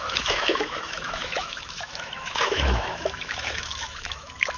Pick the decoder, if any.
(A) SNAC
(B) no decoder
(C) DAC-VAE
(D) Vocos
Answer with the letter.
C